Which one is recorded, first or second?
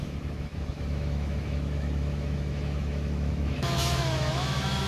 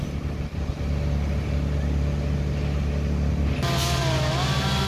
second